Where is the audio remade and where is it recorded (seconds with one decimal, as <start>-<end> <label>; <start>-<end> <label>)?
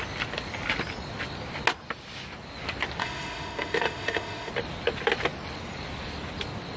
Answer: 0.0-3.0 recorded; 3.0-4.5 remade; 4.5-6.8 recorded